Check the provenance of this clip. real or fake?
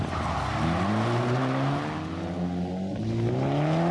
real